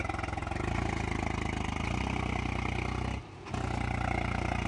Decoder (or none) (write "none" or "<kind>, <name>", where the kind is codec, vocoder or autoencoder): none